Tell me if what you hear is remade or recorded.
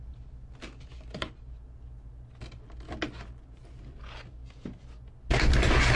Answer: recorded